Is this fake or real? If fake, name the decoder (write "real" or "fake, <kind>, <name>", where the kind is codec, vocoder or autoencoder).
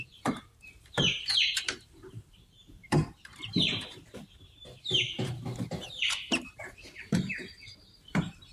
fake, vocoder, BigVGAN v2